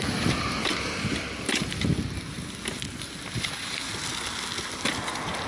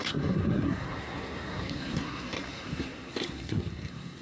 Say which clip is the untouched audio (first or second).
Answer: first